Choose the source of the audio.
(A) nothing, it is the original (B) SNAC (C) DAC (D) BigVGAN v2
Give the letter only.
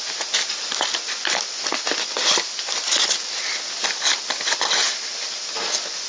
A